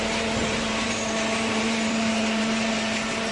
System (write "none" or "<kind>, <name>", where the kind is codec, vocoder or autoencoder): vocoder, BigVGAN v2